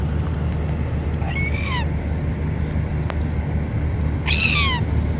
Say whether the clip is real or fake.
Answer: real